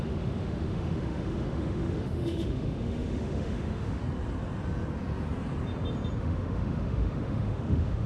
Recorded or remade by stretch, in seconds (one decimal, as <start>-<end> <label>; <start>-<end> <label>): 0.0-4.0 remade; 4.0-6.2 recorded; 6.2-8.1 remade